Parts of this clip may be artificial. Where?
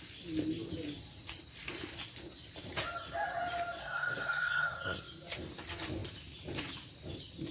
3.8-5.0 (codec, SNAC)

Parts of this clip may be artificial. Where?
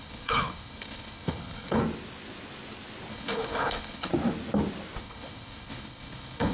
0.0-1.8 (codec, HILCodec); 3.1-4.1; 5.0-6.5